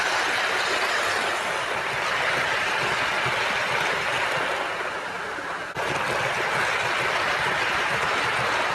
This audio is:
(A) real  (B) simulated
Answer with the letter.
A